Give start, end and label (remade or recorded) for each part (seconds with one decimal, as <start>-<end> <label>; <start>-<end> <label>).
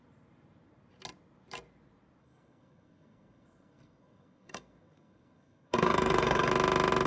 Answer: 0.0-2.2 recorded; 2.2-6.5 remade; 6.5-7.1 recorded